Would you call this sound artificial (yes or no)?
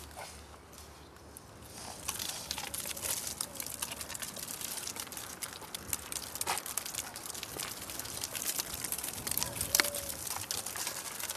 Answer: no